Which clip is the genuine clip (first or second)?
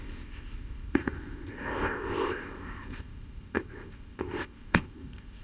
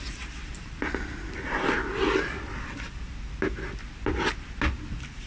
second